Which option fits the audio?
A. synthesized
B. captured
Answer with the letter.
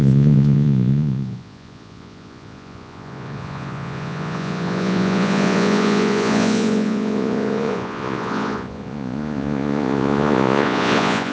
A